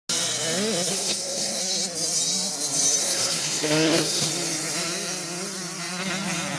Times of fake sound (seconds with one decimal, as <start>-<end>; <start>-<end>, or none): 0.9-1.6; 3.0-4.3